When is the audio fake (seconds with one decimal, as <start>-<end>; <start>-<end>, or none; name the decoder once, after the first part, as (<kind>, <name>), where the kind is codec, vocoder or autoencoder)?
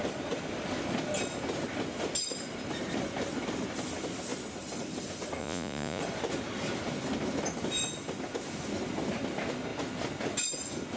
5.4-6.0 (vocoder, Vocos)